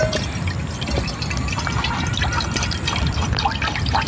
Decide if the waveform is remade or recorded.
recorded